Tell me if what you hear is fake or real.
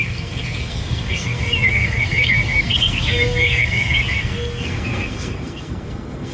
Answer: fake